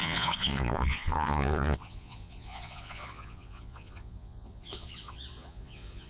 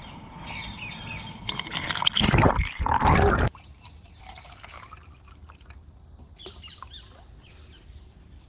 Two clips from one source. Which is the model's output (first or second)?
first